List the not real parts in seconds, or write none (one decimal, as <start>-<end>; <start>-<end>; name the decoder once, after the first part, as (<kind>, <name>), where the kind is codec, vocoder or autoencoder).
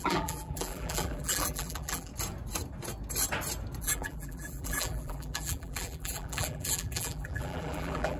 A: 0.0-2.1 (vocoder, BigVGAN v2); 3.8-8.2